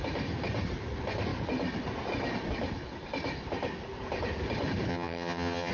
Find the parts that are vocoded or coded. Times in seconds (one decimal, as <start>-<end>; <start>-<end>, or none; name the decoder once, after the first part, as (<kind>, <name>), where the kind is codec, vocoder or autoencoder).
4.9-5.7 (vocoder, HiFi-GAN)